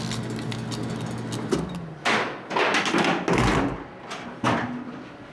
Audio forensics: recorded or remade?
recorded